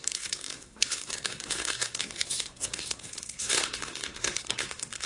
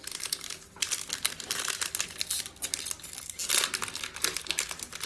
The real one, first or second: second